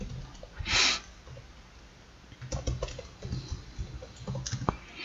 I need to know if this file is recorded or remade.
recorded